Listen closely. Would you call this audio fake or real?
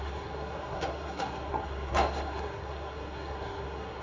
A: fake